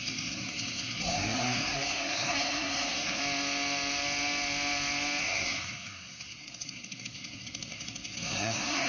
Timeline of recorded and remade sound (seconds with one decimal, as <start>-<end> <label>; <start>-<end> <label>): 0.0-3.2 remade; 3.2-5.2 recorded; 5.2-8.9 remade